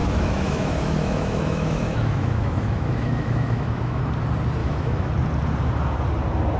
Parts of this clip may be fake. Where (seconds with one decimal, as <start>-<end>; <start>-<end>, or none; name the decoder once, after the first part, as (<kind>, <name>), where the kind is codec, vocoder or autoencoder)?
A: 0.0-4.0 (autoencoder, DAC-VAE); 4.6-5.1